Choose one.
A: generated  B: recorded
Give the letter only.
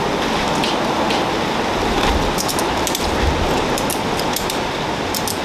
B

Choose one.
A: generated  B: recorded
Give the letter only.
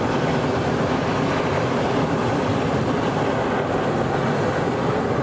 B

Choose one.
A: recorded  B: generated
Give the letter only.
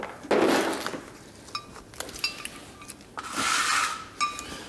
A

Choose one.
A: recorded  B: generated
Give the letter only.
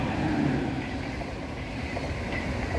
B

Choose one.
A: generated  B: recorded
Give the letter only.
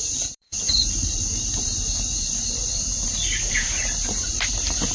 A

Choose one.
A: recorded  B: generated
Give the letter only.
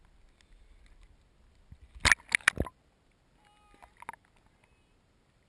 A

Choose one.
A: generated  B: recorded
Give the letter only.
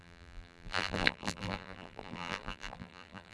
A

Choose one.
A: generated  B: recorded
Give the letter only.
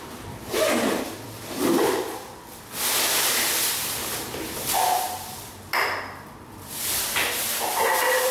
A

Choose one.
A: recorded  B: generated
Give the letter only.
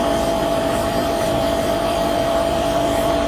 B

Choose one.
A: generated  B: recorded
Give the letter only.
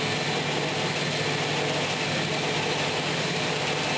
B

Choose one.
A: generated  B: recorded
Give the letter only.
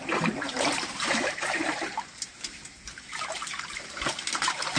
A